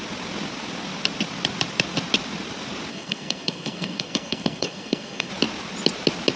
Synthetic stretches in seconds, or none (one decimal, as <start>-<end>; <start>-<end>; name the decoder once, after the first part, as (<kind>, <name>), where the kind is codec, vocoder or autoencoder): 2.9-5.3 (codec, SNAC)